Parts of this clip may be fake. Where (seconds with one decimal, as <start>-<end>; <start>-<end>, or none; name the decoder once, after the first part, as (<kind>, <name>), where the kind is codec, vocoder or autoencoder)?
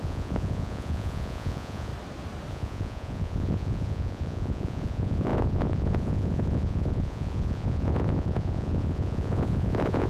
0.0-1.9 (vocoder, Vocos); 2.5-10.1